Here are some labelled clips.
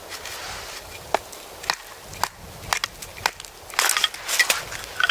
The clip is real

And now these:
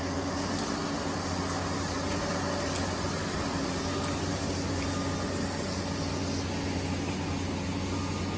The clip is real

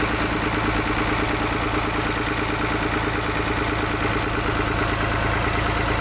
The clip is real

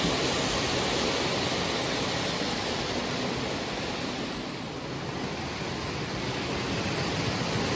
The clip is real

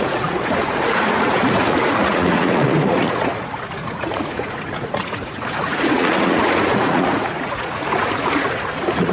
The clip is fake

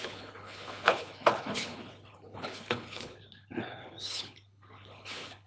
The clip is fake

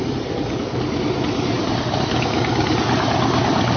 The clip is real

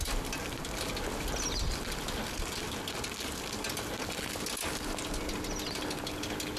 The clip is real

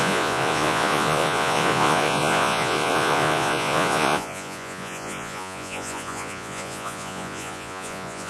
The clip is fake